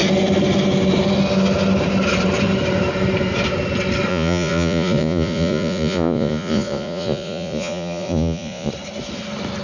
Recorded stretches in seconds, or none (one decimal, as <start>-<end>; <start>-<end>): 0.0-4.1; 8.7-9.6